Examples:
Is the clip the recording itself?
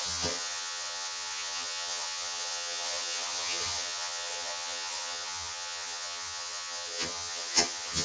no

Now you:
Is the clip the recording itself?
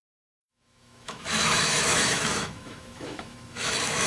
no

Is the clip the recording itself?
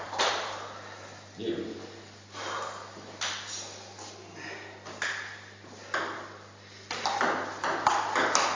yes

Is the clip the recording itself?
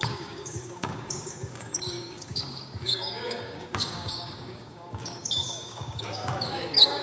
no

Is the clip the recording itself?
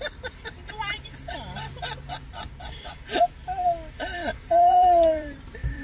no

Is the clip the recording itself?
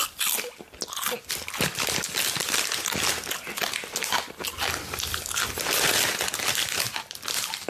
yes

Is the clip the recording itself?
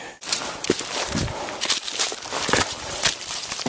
no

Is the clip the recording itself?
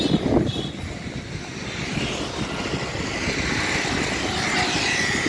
yes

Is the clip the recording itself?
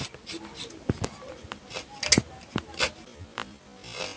yes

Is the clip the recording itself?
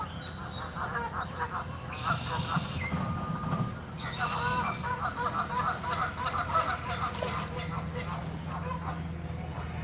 yes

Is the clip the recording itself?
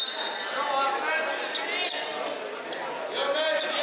yes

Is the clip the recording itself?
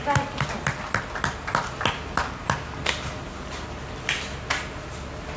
yes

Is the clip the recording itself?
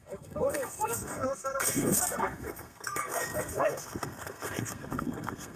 no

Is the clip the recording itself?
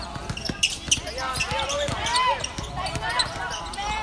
yes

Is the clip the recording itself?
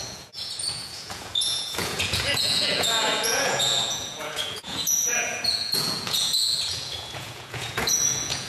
no